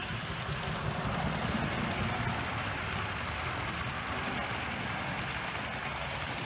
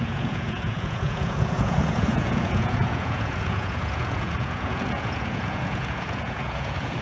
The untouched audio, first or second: first